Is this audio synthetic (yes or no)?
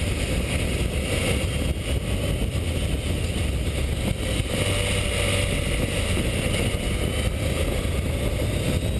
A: no